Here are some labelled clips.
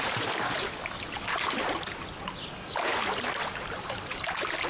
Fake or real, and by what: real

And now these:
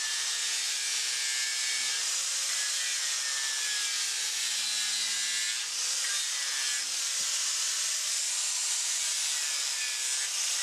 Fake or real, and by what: real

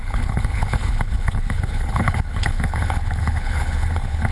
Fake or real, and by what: fake, codec, HILCodec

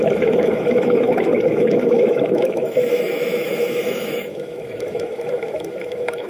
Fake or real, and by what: fake, autoencoder, DAC-VAE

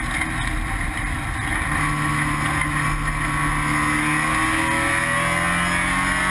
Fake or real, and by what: real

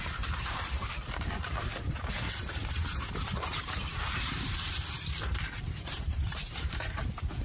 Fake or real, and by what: fake, vocoder, BigVGAN v2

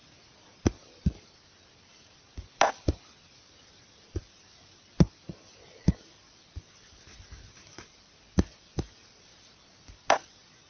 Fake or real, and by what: real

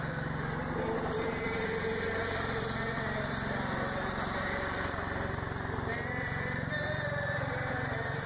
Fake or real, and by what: fake, vocoder, BigVGAN v2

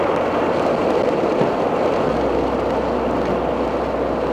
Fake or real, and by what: real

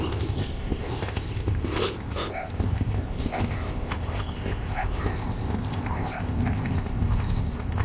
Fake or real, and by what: fake, codec, ZipCodec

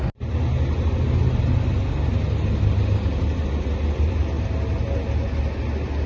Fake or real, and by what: real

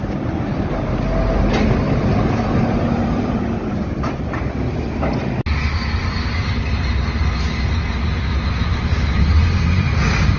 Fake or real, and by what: real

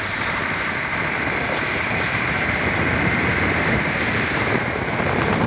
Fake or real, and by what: fake, vocoder, BigVGAN v2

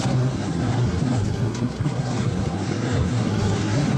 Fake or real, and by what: fake, codec, SNAC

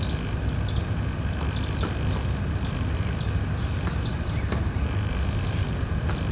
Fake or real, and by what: real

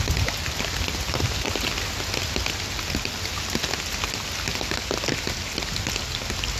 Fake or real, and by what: real